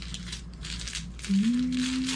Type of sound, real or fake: real